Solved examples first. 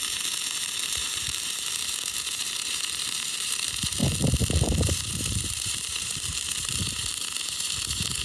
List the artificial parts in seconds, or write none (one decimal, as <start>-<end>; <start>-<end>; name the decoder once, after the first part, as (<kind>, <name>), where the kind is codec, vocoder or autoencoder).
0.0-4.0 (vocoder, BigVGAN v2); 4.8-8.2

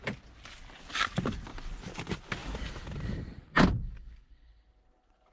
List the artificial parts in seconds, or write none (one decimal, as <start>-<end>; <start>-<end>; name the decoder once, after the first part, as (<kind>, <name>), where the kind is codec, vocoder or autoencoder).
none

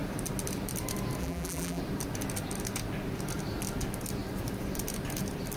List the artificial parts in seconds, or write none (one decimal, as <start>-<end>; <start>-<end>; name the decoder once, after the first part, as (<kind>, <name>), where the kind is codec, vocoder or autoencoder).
1.2-1.8 (vocoder, BigVGAN v2)

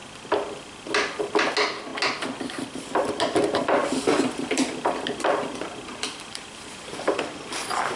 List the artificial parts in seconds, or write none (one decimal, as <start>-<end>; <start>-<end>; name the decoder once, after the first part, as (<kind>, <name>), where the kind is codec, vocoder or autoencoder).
3.8-7.2 (vocoder, BigVGAN v2)